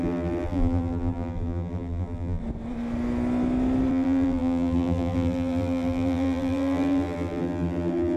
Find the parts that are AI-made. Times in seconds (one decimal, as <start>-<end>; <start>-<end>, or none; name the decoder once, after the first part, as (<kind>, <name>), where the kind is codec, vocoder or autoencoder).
0.0-2.4 (vocoder, BigVGAN v2); 3.9-8.2